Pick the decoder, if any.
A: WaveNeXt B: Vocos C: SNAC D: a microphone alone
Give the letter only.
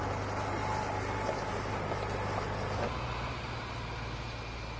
D